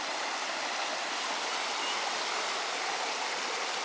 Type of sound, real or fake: real